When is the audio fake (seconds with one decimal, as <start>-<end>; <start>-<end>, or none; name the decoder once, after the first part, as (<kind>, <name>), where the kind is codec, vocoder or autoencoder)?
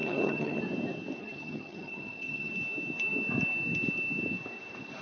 0.0-0.6 (vocoder, HiFi-GAN); 1.2-2.5